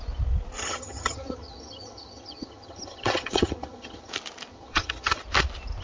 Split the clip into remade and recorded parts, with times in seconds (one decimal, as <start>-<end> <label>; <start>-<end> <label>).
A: 0.0-0.6 recorded; 0.6-4.1 remade; 4.1-4.5 recorded; 4.5-5.2 remade; 5.2-5.8 recorded